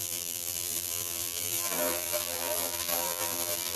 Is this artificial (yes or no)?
yes